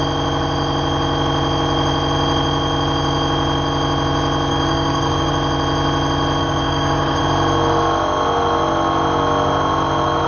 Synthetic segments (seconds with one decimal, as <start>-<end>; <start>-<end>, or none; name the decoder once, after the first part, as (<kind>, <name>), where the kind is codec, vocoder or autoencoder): 4.5-5.3 (codec, DAC); 6.4-7.2